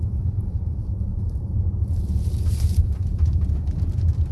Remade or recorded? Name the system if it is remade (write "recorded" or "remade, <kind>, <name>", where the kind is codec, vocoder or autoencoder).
remade, vocoder, BigVGAN v2